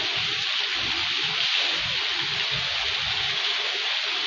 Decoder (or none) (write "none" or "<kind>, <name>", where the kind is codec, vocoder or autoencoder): none